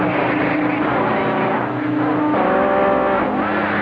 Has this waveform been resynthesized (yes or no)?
no